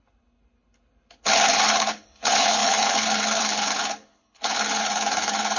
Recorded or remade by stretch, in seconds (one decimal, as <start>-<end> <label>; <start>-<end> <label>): 0.0-5.6 remade